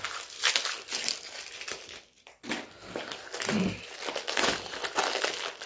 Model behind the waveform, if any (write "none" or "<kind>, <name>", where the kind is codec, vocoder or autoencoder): none